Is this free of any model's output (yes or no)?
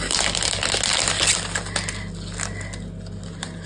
yes